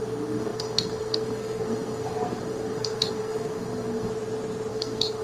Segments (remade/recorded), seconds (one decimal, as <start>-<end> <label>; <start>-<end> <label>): 0.0-4.1 remade; 4.1-4.7 recorded; 4.7-5.2 remade